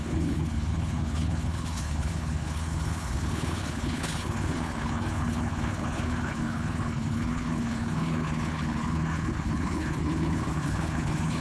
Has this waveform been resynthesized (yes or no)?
yes